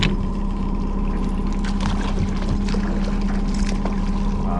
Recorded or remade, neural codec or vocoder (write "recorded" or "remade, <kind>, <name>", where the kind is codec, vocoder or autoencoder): recorded